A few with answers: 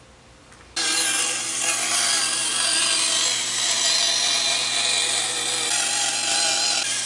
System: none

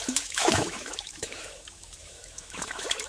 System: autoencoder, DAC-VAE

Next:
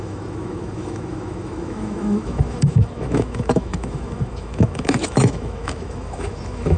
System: autoencoder, DAC-VAE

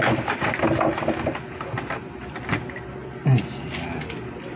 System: none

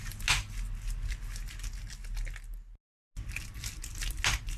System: none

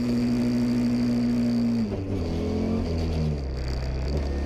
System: none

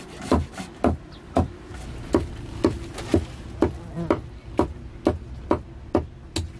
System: none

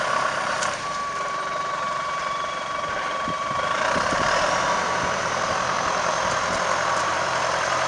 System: vocoder, BigVGAN v2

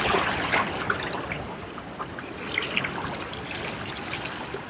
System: none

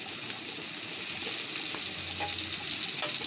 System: none